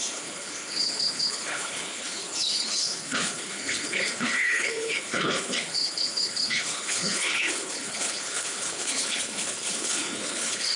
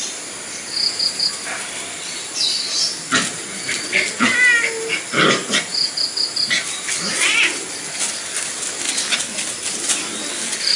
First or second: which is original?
second